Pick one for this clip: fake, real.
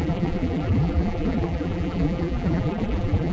fake